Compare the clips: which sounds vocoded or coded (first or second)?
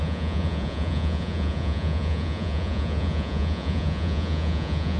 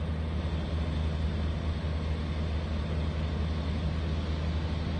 first